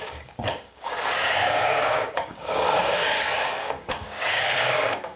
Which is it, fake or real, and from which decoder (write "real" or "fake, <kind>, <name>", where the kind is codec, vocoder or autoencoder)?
fake, codec, DAC